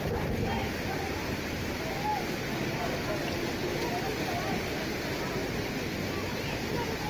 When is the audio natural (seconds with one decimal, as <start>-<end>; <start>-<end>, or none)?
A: 0.0-7.1